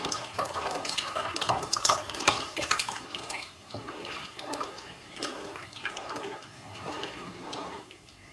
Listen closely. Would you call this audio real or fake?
fake